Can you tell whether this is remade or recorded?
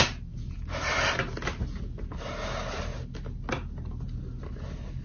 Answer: recorded